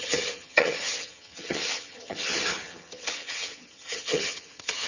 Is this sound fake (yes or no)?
yes